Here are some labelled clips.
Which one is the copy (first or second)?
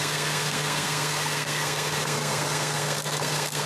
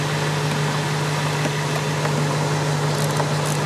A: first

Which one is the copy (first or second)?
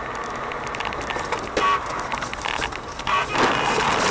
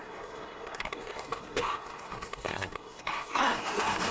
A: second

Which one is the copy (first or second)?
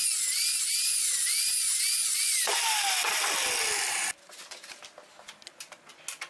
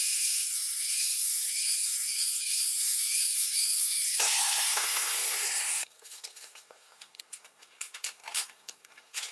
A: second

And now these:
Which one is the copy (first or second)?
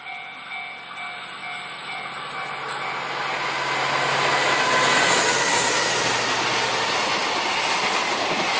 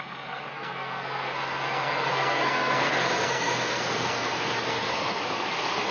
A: second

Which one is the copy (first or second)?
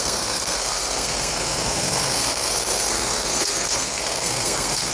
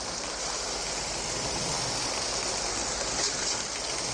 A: first